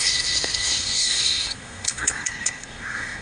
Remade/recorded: remade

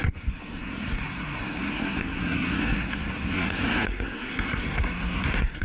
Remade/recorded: remade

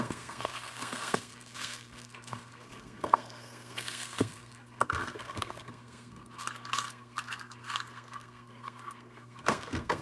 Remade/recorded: remade